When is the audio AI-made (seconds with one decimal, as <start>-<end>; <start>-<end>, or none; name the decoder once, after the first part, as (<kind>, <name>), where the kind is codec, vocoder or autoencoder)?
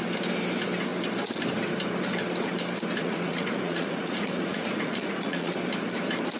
3.0-5.5 (vocoder, Vocos)